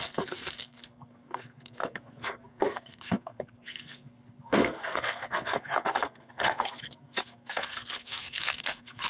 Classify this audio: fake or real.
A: fake